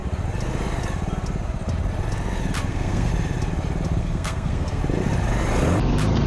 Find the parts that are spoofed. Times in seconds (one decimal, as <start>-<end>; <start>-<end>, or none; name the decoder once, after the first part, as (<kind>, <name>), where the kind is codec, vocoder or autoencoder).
2.7-3.1 (codec, SNAC); 4.0-4.8